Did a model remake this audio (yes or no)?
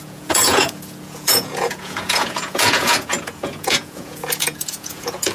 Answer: yes